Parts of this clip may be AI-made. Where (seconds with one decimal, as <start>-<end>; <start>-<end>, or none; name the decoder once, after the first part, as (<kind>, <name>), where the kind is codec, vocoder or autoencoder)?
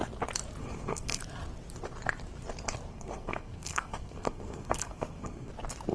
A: 0.6-1.2 (codec, SNAC); 2.9-5.5